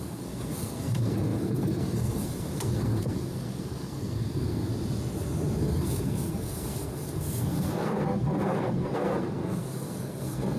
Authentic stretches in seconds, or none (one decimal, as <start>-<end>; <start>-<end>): 4.7-5.6